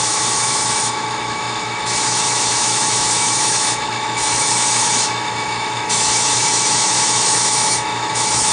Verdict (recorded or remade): remade